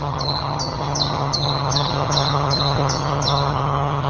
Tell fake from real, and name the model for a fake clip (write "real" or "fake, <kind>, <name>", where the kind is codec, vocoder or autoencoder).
fake, vocoder, HiFi-GAN